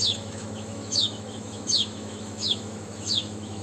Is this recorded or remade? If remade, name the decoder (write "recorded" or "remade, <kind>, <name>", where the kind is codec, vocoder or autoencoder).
remade, autoencoder, DAC-VAE